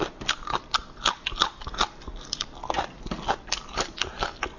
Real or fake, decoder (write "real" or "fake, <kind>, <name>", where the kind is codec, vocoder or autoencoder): real